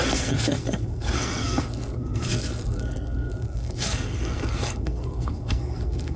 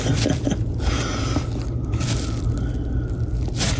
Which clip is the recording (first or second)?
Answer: second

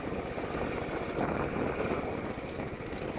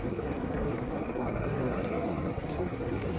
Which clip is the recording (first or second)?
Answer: first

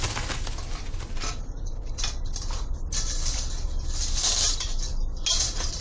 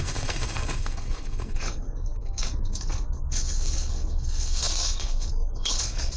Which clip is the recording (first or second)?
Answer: first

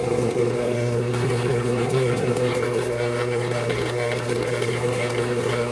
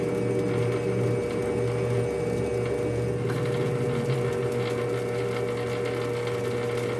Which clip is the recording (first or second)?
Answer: second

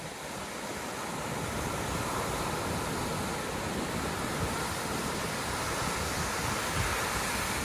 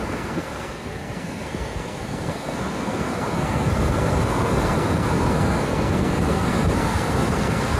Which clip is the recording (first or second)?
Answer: first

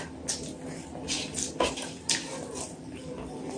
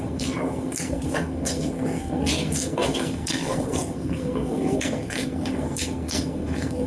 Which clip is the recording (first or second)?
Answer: first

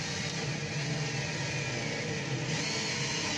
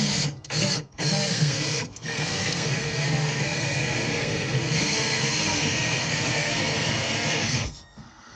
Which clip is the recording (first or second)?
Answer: first